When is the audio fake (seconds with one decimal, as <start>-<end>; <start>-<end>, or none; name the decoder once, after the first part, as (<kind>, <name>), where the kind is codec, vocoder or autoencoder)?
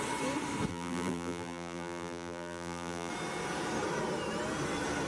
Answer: 0.7-3.1 (vocoder, BigVGAN v2)